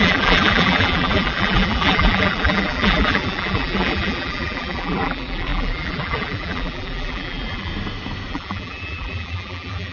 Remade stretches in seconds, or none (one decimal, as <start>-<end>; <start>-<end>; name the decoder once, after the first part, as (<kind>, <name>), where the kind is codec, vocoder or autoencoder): 0.0-7.7 (vocoder, BigVGAN v2); 8.3-9.9